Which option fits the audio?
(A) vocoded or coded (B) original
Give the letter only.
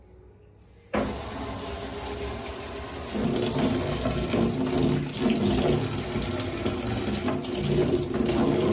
B